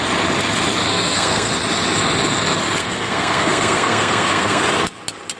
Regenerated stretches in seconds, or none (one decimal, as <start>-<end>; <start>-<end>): 0.9-1.5; 2.8-4.6